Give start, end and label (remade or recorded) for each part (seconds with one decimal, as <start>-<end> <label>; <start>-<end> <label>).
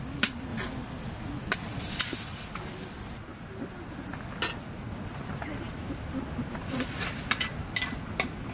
0.0-8.5 recorded